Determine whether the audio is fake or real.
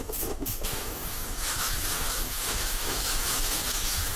fake